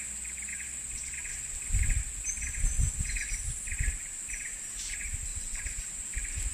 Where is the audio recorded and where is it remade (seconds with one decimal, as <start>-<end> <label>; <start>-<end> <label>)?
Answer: 0.0-1.3 recorded; 1.3-1.8 remade; 1.8-3.4 recorded; 3.4-4.6 remade; 4.6-5.3 recorded; 5.3-5.9 remade; 5.9-6.5 recorded